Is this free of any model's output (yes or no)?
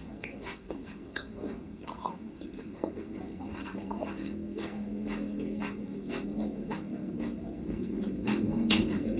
no